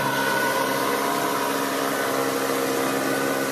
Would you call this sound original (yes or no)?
yes